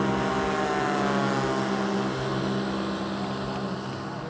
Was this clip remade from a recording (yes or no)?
no